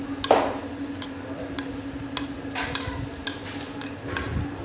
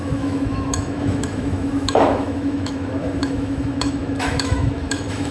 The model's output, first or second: second